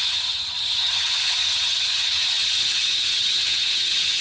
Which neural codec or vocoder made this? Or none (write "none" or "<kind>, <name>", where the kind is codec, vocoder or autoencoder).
vocoder, HiFi-GAN